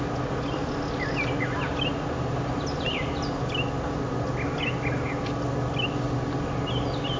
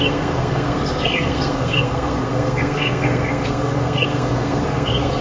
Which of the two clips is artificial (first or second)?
second